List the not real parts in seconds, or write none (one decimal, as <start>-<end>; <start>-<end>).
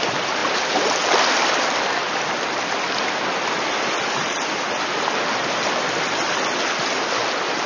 none